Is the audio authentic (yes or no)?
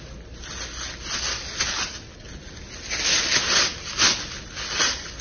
yes